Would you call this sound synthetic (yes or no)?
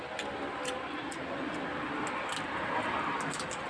no